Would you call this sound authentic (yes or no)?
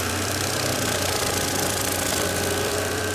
no